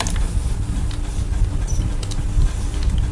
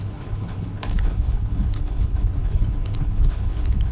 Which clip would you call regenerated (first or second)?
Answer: second